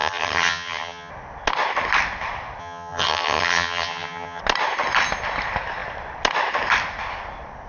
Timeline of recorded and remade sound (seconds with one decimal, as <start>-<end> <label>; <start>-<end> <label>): 0.0-1.1 remade; 1.1-2.6 recorded; 2.6-4.4 remade; 4.4-7.7 recorded